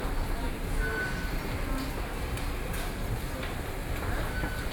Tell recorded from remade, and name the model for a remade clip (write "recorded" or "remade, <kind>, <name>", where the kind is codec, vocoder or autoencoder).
recorded